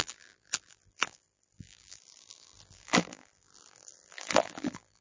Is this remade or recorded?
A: remade